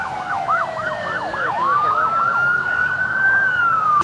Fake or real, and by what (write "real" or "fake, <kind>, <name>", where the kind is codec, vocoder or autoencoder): fake, codec, DAC